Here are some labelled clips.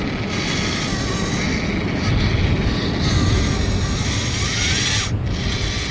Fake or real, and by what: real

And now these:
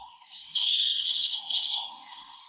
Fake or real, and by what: fake, codec, SNAC